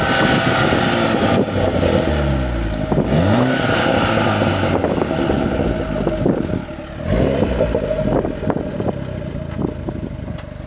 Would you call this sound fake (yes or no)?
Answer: no